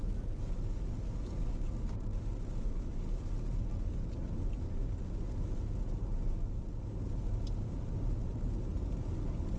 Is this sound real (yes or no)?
yes